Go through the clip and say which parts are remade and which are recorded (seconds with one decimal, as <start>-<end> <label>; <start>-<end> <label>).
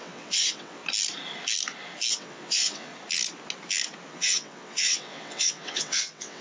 0.0-0.8 remade; 0.8-2.1 recorded; 2.1-2.9 remade; 2.9-4.1 recorded; 4.1-6.4 remade